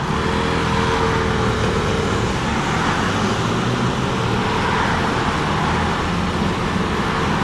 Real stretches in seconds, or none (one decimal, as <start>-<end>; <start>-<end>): 0.0-7.4